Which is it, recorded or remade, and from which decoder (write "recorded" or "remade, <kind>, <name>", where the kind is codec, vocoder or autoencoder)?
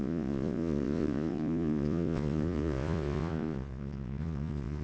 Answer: remade, vocoder, Vocos